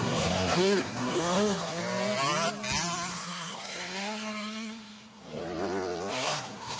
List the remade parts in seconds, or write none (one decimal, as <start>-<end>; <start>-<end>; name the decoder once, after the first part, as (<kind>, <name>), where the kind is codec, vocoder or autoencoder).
0.0-1.8 (codec, SNAC); 3.1-5.4; 6.1-6.8